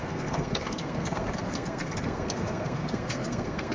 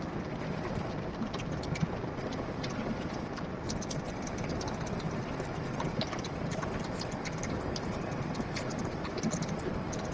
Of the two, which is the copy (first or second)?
first